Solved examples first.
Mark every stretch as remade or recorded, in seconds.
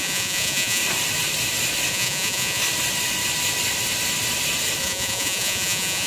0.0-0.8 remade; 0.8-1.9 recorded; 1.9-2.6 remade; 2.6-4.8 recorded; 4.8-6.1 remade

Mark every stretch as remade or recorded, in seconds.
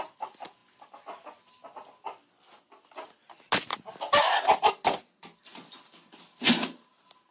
0.0-7.3 recorded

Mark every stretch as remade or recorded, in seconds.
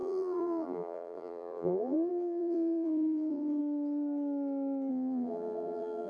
0.0-3.6 remade; 3.6-4.9 recorded; 4.9-6.1 remade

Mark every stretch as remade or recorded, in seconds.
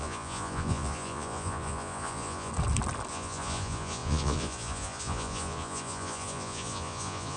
0.0-2.5 remade; 2.5-3.1 recorded; 3.1-7.4 remade